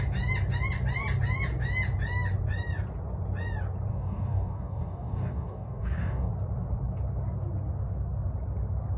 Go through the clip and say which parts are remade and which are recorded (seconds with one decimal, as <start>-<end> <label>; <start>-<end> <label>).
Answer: 0.0-3.9 recorded; 3.9-6.3 remade; 6.3-9.0 recorded